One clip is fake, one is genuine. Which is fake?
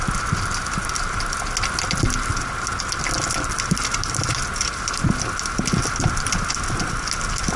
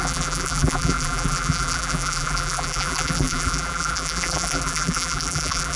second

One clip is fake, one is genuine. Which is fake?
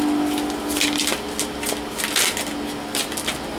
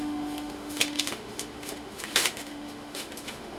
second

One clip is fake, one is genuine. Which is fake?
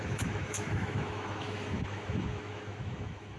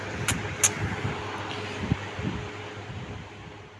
first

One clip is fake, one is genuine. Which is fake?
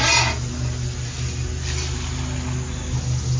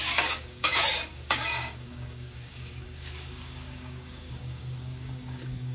second